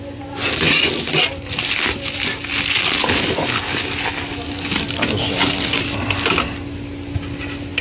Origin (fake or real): real